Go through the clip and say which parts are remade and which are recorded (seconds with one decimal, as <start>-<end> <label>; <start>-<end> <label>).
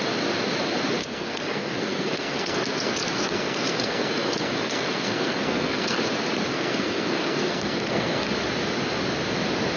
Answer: 0.0-1.0 recorded; 1.0-6.0 remade; 6.0-6.5 recorded; 6.5-8.3 remade; 8.3-9.8 recorded